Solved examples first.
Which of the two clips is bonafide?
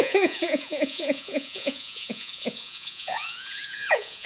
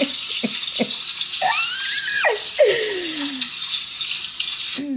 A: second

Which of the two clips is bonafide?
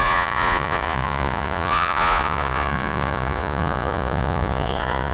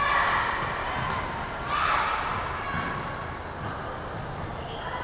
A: second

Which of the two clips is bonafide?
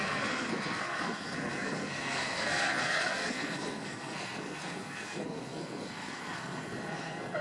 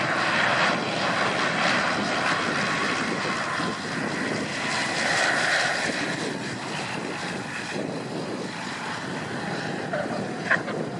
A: second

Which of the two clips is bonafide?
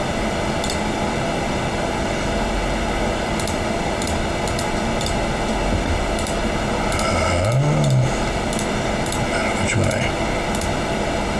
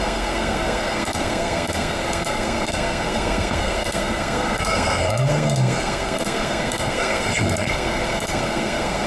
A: first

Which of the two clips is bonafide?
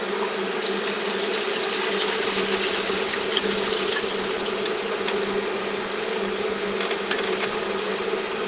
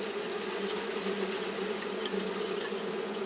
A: first